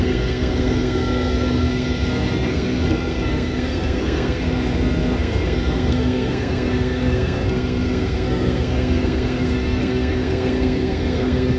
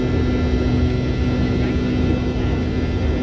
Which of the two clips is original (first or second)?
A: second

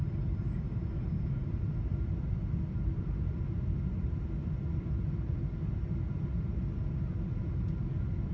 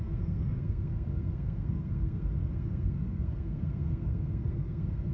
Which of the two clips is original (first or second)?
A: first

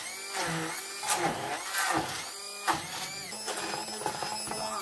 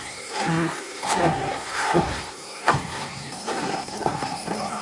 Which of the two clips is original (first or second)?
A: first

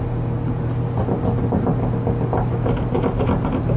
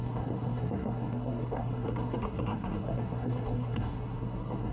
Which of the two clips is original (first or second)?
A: first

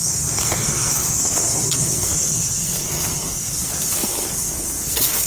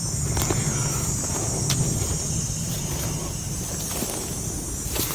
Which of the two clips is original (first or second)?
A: second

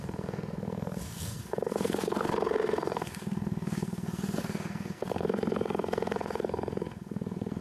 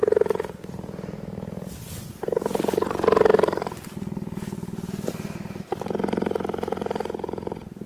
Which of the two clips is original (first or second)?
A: second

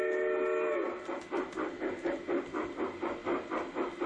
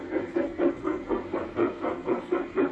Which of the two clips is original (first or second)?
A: first